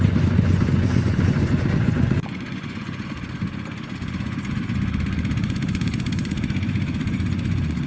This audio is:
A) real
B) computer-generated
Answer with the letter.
B